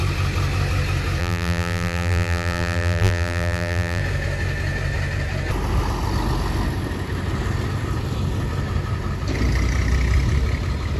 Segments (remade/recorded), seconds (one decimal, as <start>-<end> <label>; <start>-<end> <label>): 0.0-1.2 recorded; 1.2-4.0 remade; 4.0-11.0 recorded